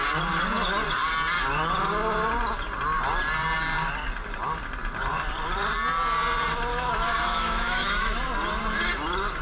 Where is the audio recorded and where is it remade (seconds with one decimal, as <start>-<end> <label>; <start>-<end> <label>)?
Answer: 0.0-6.7 recorded; 6.7-8.2 remade; 8.2-9.4 recorded